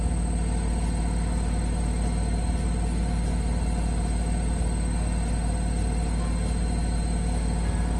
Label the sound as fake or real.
real